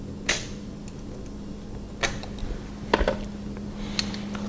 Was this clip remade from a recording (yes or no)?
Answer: no